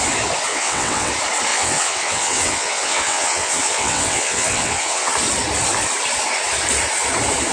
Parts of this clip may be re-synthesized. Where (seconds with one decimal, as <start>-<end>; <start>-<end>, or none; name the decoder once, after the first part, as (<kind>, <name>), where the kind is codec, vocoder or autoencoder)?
0.5-1.1 (vocoder, WaveNeXt); 1.5-5.1